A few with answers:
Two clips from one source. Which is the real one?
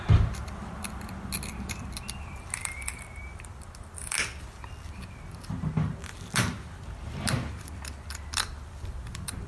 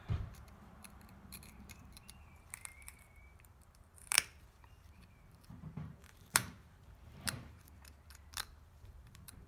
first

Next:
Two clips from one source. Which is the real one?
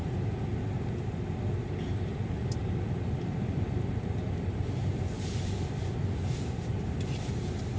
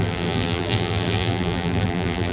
first